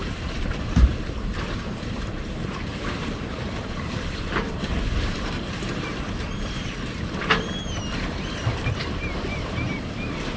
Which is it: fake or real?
fake